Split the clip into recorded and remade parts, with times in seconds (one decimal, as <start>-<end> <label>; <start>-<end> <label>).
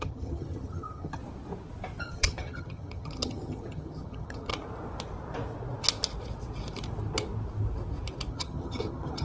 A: 0.0-1.2 remade; 1.2-2.0 recorded; 2.0-4.5 remade; 4.5-8.3 recorded; 8.3-9.2 remade